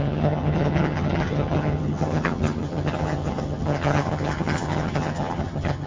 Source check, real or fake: fake